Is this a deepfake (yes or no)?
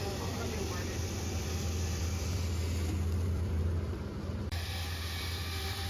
yes